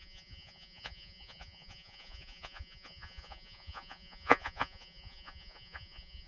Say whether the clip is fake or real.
fake